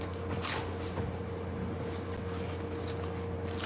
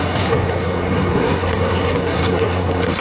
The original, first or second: first